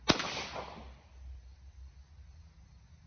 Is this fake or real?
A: real